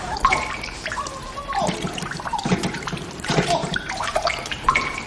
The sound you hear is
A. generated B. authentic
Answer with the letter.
A